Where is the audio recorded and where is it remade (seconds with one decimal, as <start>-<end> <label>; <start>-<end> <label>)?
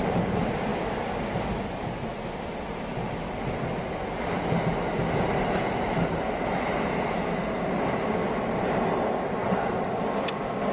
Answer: 0.0-10.7 recorded